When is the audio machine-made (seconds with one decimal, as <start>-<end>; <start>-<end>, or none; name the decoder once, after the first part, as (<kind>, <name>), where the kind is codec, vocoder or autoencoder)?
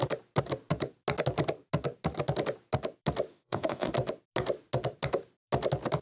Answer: 3.3-3.9 (autoencoder, DAC-VAE)